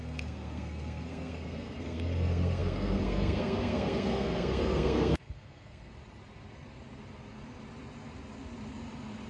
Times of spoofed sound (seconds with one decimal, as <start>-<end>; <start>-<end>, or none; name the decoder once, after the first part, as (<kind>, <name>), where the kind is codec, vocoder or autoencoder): 0.0-5.9 (codec, SNAC)